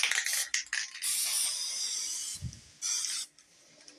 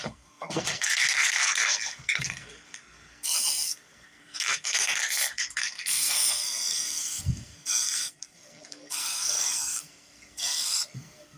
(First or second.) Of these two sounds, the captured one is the first